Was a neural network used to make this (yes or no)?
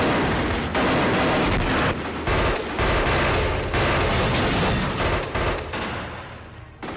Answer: no